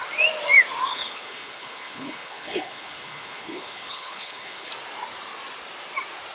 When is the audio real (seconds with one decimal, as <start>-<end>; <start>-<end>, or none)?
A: 0.0-0.9; 4.7-6.3